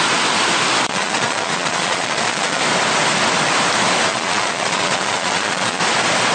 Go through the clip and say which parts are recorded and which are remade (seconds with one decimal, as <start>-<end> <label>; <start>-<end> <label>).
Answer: 0.0-0.9 recorded; 0.9-2.6 remade; 2.6-4.1 recorded; 4.1-5.8 remade; 5.8-6.3 recorded

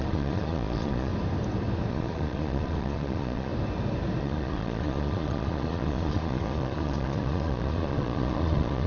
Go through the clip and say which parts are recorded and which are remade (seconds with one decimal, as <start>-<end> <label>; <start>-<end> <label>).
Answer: 0.0-1.1 remade; 1.1-1.9 recorded; 1.9-3.5 remade; 3.5-4.2 recorded; 4.2-8.9 remade

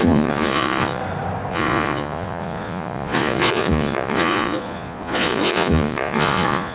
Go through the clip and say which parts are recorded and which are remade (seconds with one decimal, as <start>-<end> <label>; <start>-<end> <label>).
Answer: 0.0-1.0 remade; 1.0-1.5 recorded; 1.5-6.7 remade

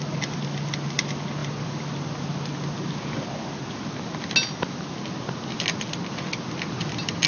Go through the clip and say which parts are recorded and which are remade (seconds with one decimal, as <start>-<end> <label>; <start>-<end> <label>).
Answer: 0.0-7.3 recorded

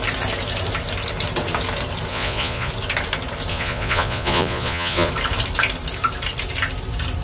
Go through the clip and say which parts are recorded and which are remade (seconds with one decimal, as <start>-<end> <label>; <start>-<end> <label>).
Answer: 0.0-2.1 recorded; 2.1-2.7 remade; 2.7-3.5 recorded; 3.5-5.1 remade; 5.1-7.2 recorded

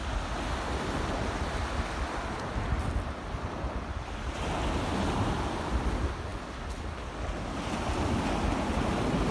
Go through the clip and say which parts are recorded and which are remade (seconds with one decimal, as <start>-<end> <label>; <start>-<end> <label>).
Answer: 0.0-9.3 recorded